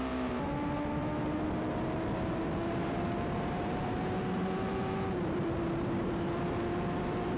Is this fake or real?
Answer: fake